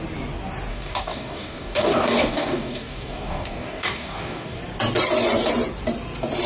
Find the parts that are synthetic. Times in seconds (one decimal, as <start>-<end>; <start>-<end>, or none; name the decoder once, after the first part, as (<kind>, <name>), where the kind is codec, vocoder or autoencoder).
0.7-4.6 (codec, DAC)

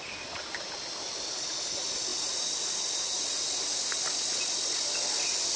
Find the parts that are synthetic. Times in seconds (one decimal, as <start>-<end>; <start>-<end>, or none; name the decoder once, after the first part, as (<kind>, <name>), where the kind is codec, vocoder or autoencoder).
none

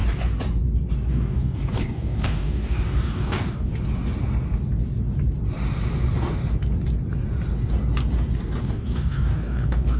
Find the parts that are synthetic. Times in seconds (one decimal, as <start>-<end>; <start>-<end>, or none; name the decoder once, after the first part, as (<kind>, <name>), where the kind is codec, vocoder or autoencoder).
1.1-3.7 (codec, DAC); 8.6-10.0

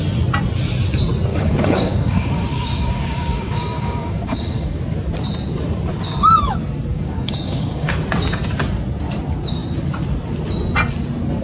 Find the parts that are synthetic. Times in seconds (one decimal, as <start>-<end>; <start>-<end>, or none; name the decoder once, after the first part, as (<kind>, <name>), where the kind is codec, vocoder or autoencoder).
1.3-4.8 (codec, DAC); 6.9-7.9

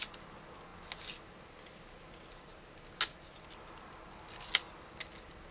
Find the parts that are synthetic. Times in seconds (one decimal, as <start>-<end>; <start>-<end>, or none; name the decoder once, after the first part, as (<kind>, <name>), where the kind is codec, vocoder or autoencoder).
none

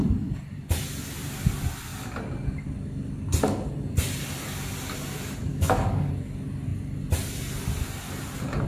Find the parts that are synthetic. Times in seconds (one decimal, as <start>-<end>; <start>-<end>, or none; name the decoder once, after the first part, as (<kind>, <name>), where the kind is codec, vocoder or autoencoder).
5.5-6.1 (codec, DAC)

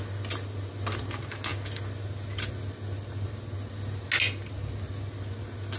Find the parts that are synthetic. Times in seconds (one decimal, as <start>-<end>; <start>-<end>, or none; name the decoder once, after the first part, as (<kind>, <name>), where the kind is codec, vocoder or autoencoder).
none